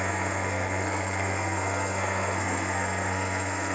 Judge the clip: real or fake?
fake